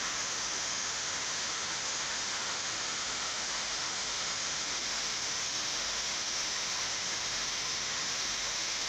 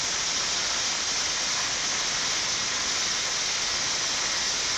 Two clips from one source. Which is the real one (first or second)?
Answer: second